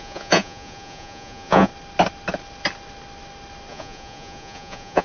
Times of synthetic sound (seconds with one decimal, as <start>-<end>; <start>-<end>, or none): 0.0-1.7; 3.7-5.0